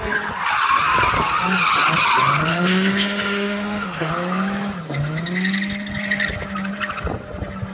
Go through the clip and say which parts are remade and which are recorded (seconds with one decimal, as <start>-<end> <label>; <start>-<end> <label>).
0.0-2.5 recorded; 2.5-4.1 remade; 4.1-7.7 recorded